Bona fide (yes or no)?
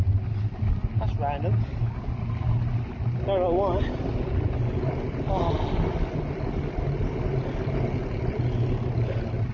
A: yes